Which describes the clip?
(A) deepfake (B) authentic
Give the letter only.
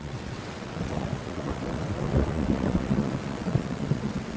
A